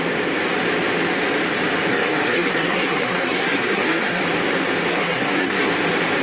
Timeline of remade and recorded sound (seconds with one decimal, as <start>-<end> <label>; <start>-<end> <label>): 0.0-1.9 recorded; 1.9-4.2 remade; 4.2-4.9 recorded; 4.9-5.7 remade; 5.7-6.2 recorded